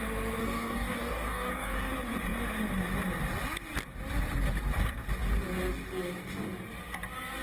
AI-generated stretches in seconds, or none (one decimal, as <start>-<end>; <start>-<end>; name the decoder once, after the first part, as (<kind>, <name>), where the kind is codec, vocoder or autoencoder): 0.4-1.9 (codec, DAC)